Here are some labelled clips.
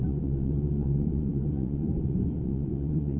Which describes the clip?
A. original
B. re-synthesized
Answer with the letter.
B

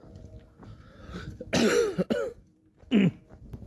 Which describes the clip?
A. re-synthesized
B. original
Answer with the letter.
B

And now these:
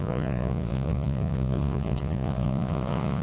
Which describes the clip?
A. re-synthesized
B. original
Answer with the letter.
A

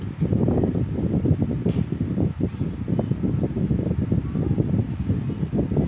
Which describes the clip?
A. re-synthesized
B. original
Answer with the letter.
B